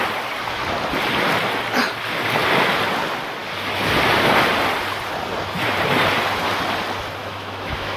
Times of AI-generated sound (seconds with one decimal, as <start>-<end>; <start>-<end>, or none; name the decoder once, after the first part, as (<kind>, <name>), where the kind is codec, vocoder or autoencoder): 7.2-8.0 (autoencoder, DAC-VAE)